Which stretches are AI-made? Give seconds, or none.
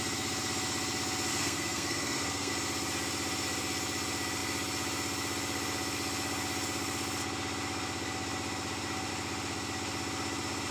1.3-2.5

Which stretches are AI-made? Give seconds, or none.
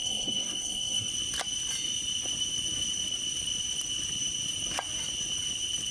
0.0-1.1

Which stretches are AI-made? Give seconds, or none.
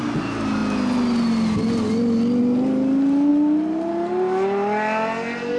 none